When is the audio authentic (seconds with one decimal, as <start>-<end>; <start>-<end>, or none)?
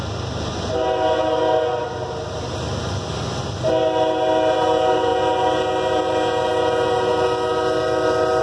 0.0-8.4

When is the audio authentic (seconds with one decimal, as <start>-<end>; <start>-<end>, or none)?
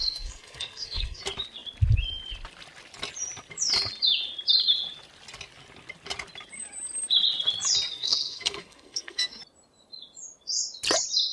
1.2-7.9; 9.4-11.3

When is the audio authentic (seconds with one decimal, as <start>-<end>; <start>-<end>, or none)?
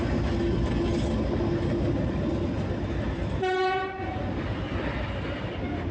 0.0-5.9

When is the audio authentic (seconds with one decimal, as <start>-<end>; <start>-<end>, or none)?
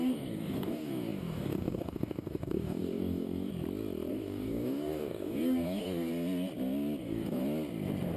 3.5-4.1; 6.1-7.0; 7.4-8.2